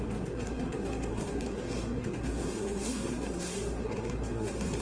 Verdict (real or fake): fake